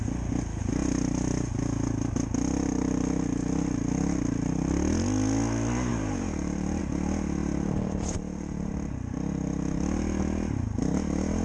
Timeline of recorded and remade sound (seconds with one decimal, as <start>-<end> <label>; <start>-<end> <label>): 0.0-5.9 recorded; 5.9-6.8 remade; 6.8-7.4 recorded; 7.4-8.7 remade; 8.7-11.4 recorded